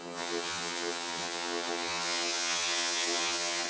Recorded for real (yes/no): no